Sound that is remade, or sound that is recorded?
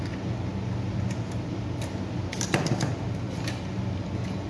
recorded